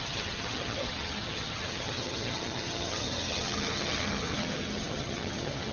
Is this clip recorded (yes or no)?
no